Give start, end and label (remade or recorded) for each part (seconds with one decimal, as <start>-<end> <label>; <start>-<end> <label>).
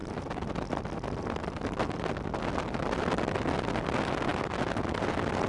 0.0-5.5 recorded